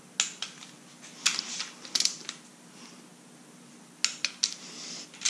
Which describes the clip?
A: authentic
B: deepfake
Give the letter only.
A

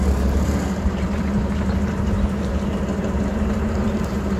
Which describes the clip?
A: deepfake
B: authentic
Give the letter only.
A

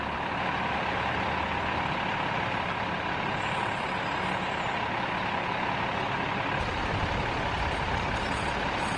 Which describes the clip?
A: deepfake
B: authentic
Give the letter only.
B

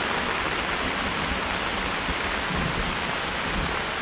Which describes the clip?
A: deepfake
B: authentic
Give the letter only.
B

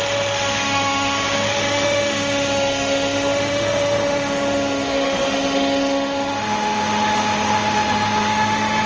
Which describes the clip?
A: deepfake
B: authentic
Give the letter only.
A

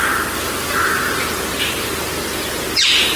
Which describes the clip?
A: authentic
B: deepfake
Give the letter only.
A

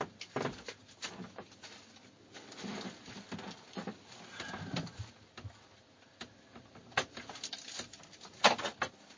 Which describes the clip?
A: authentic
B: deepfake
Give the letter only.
A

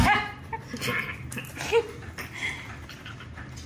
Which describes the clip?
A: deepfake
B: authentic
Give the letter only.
A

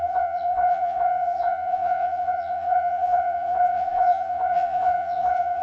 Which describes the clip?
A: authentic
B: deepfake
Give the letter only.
B